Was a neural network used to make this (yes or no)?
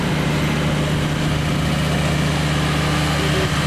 no